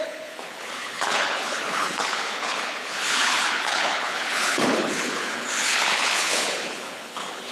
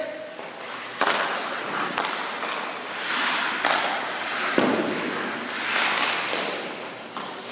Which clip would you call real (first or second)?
second